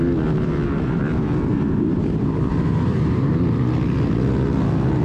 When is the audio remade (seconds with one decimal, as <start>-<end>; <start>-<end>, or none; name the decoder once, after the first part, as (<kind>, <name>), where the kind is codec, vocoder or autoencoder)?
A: 1.5-3.3 (vocoder, BigVGAN v2)